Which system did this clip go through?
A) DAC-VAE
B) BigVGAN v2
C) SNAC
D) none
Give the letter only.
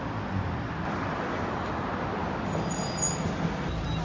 D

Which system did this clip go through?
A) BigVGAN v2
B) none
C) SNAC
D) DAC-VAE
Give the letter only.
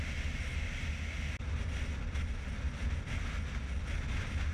B